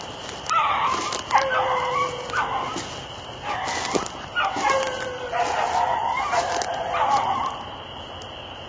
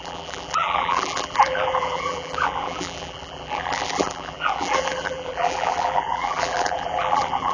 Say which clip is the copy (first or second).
second